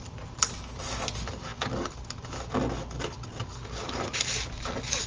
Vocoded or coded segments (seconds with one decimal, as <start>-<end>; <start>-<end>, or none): 0.0-0.6